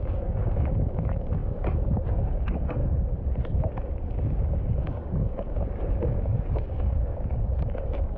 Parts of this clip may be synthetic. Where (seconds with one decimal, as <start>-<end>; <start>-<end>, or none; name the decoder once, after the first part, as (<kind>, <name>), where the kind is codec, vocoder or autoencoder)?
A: 0.0-2.8 (codec, DAC); 3.9-8.2